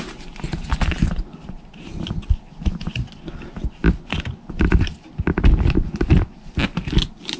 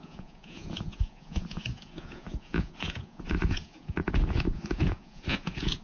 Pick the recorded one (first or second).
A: first